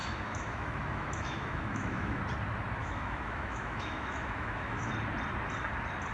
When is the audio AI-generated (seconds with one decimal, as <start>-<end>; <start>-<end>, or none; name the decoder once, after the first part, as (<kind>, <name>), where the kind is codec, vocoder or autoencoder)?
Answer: 0.0-2.2 (autoencoder, DAC-VAE); 2.8-4.9